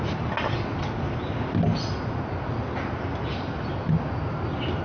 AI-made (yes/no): no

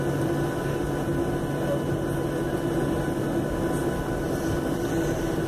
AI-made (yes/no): no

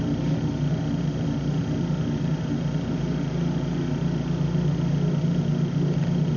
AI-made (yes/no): no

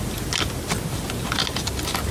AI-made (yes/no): no